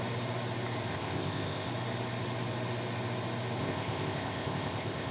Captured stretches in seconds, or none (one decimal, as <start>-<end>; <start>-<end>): 0.0-0.9; 1.7-3.6